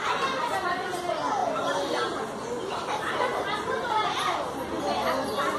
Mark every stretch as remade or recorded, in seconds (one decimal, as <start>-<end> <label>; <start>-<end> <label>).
0.0-5.6 recorded

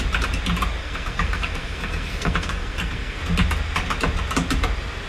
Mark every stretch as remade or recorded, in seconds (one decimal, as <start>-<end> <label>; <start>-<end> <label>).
0.0-0.8 recorded; 0.8-3.2 remade; 3.2-5.1 recorded

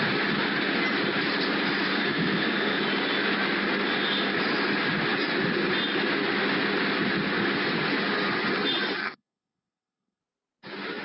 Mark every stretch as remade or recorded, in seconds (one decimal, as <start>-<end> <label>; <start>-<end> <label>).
0.0-1.9 recorded; 1.9-2.8 remade; 2.8-9.0 recorded; 9.0-10.2 remade; 10.2-11.0 recorded

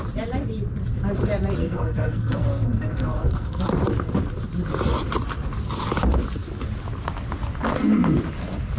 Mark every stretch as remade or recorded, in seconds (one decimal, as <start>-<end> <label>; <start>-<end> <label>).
0.0-1.6 recorded; 1.6-3.6 remade; 3.6-8.8 recorded

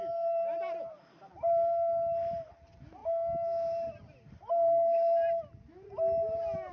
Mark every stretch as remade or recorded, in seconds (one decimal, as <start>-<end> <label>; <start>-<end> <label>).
0.0-6.7 recorded

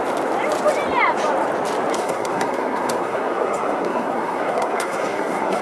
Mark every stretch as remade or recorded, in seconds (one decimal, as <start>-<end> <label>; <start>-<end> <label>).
0.0-1.9 recorded; 1.9-5.6 remade

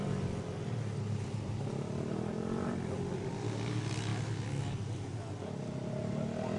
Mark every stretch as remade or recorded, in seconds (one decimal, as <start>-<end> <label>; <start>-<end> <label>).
0.0-6.6 recorded

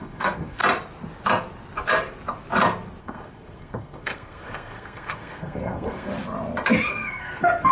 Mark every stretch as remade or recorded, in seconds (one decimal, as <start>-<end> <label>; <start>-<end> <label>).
0.0-0.6 remade; 0.6-3.0 recorded; 3.0-6.1 remade; 6.1-6.9 recorded; 6.9-7.7 remade